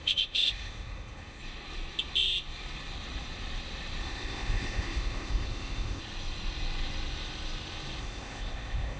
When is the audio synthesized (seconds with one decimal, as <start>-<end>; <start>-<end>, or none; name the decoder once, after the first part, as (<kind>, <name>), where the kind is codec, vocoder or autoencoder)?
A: 0.0-1.4 (codec, ZipCodec); 4.0-6.0; 8.0-9.0